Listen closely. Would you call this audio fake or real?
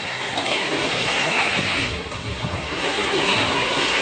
fake